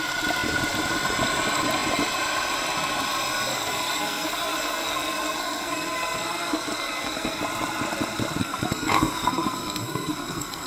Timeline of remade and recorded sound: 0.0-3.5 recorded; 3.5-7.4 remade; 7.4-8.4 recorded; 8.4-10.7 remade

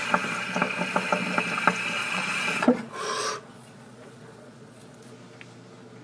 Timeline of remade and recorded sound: 0.0-2.0 recorded; 2.0-5.1 remade; 5.1-6.0 recorded

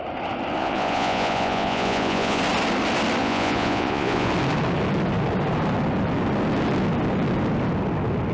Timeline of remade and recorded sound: 0.0-0.6 recorded; 0.6-2.4 remade; 2.4-3.2 recorded; 3.2-4.3 remade; 4.3-8.3 recorded

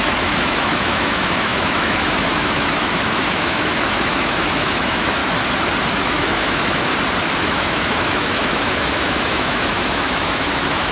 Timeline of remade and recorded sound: 0.0-5.2 remade; 5.2-5.9 recorded; 5.9-6.9 remade; 6.9-7.4 recorded; 7.4-10.9 remade

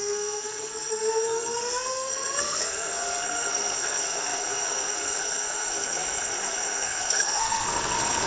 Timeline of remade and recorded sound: 0.0-8.3 remade

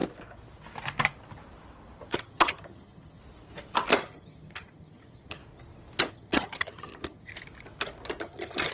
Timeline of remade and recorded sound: 0.0-2.1 recorded; 2.1-3.2 remade; 3.2-4.0 recorded; 4.0-5.4 remade; 5.4-6.1 recorded; 6.1-7.3 remade; 7.3-8.2 recorded; 8.2-8.7 remade

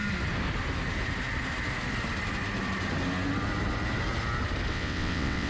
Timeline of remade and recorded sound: 0.0-4.7 recorded; 4.7-5.5 remade

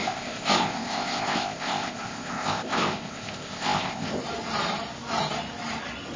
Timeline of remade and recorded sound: 0.0-4.2 remade; 4.2-6.2 recorded